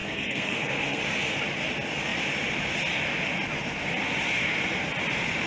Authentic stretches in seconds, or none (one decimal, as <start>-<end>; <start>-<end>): 1.0-5.5